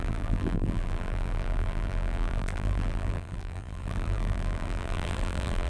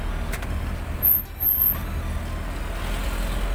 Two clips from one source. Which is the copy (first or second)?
first